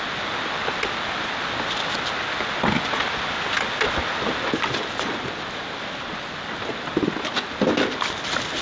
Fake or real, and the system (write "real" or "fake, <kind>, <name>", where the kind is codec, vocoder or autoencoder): real